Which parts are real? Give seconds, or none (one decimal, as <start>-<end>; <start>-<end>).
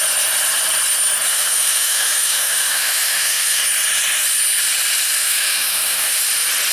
0.0-1.3; 3.6-5.2; 6.2-6.7